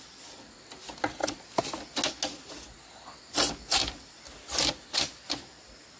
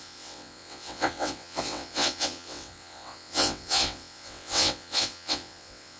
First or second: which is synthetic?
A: second